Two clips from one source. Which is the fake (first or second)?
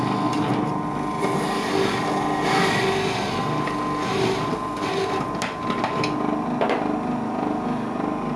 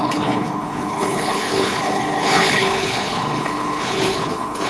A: second